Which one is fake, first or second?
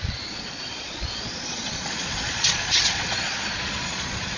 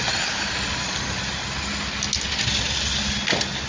first